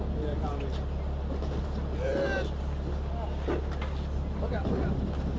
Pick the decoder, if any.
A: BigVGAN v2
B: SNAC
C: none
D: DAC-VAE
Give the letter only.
C